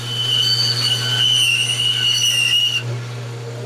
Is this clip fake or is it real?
real